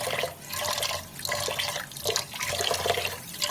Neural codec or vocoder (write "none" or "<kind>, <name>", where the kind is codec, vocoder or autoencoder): none